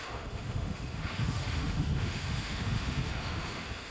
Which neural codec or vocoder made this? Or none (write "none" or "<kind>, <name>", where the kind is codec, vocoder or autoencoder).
autoencoder, DAC-VAE